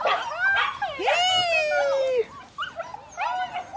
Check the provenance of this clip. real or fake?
real